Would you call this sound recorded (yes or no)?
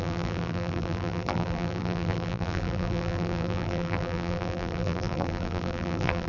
no